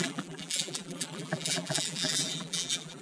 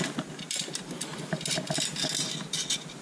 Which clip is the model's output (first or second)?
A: first